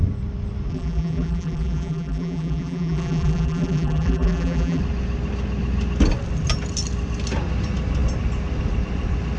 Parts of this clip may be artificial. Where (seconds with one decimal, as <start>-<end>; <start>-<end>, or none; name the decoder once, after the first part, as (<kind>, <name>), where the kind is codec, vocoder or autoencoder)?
0.7-4.8 (vocoder, BigVGAN v2)